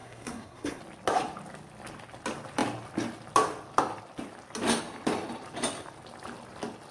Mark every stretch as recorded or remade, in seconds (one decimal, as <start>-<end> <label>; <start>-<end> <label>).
0.0-0.8 remade; 0.8-6.9 recorded